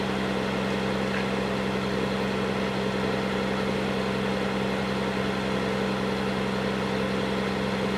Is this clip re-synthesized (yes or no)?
no